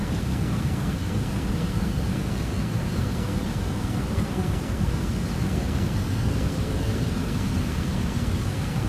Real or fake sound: fake